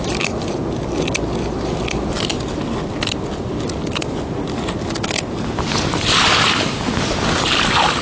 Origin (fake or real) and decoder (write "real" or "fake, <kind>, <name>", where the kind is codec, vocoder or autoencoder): real